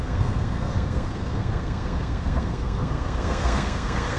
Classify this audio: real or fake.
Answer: fake